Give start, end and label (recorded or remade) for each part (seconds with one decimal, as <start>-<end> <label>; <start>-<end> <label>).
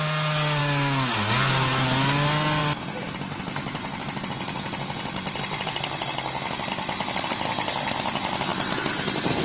0.0-9.4 recorded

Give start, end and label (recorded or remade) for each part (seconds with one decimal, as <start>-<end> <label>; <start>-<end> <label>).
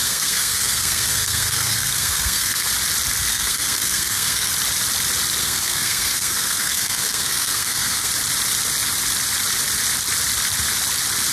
0.0-2.7 remade; 2.7-3.3 recorded; 3.3-4.5 remade; 4.5-5.4 recorded; 5.4-8.1 remade; 8.1-11.3 recorded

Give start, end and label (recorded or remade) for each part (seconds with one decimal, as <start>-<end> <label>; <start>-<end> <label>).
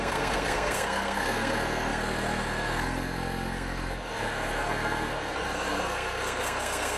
0.0-7.0 remade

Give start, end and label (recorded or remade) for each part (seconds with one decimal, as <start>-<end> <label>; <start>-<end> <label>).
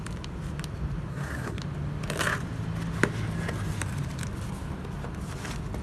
0.0-1.1 recorded; 1.1-1.6 remade; 1.6-5.8 recorded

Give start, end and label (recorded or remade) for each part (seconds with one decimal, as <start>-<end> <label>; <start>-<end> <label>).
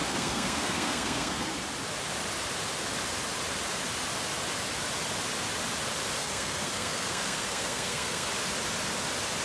0.0-1.5 remade; 1.5-6.2 recorded; 6.2-8.3 remade; 8.3-9.4 recorded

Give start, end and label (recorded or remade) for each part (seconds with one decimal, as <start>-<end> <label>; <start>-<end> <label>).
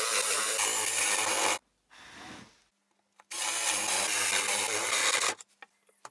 0.0-6.1 recorded